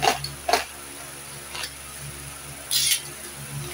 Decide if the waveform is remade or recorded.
recorded